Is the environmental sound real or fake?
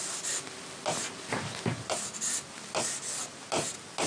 real